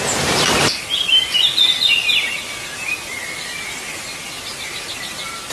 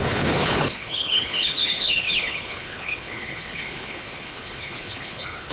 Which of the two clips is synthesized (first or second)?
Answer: second